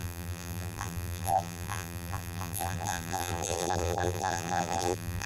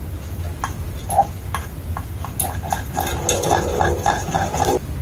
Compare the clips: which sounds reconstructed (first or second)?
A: first